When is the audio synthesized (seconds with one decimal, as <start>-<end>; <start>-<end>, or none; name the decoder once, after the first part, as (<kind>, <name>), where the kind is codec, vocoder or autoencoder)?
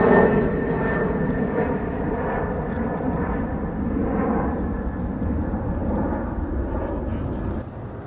none